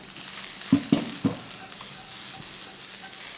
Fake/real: real